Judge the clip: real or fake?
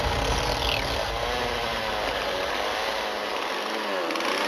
real